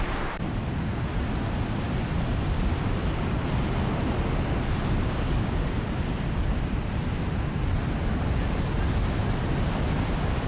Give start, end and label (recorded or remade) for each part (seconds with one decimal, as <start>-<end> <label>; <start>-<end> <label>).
0.0-5.0 recorded; 5.0-5.5 remade; 5.5-10.5 recorded